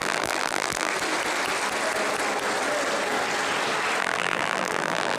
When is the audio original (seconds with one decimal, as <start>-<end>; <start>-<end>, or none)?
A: 0.9-4.0